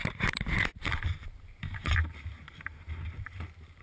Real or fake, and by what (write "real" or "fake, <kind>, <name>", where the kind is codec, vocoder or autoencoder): fake, vocoder, BigVGAN v2